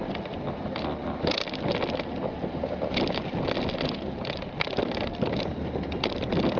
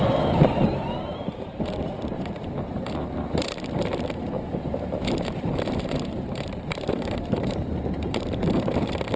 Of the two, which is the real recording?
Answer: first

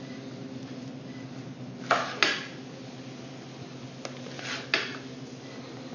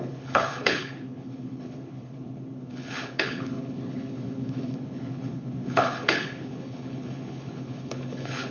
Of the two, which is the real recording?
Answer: first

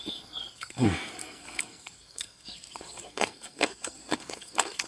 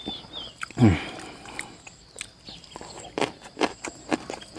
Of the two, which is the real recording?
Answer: second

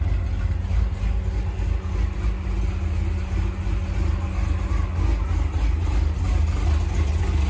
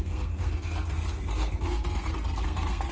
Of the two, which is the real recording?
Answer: first